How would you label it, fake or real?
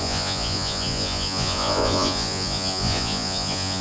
fake